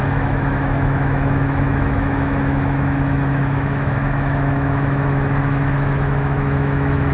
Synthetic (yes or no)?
yes